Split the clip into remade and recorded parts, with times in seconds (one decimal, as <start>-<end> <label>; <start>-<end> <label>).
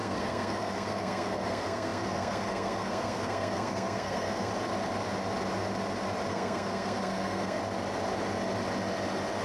0.0-4.5 remade; 4.5-6.3 recorded; 6.3-7.6 remade; 7.6-9.4 recorded